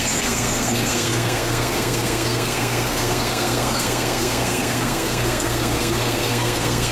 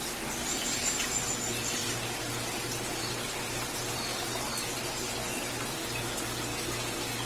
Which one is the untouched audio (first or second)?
second